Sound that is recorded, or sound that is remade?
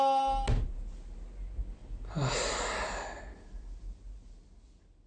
recorded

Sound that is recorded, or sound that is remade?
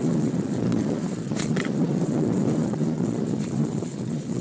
remade